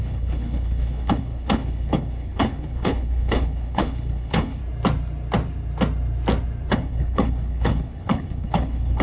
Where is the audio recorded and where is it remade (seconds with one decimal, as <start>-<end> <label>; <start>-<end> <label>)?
0.0-4.6 remade; 4.6-6.7 recorded; 6.7-9.0 remade